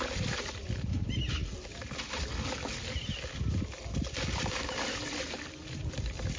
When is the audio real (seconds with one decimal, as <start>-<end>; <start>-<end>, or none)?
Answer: 0.0-6.4